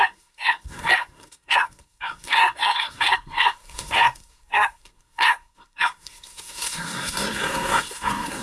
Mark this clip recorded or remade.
remade